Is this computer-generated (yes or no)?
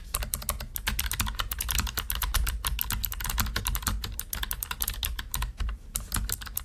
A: no